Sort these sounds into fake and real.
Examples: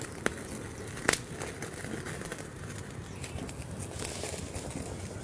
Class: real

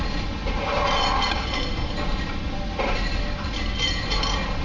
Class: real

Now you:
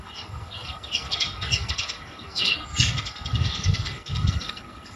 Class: fake